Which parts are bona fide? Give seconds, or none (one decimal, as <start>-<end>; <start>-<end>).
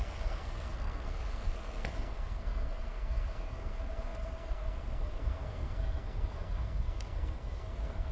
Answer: none